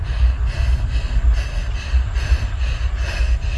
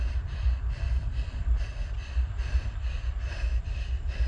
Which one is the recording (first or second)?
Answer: first